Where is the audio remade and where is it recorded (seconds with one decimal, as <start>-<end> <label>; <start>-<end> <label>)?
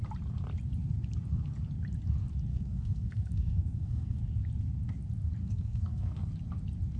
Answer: 0.0-2.5 recorded; 2.5-4.2 remade; 4.2-5.4 recorded; 5.4-6.3 remade; 6.3-7.0 recorded